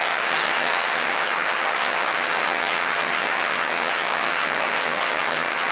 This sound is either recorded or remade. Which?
remade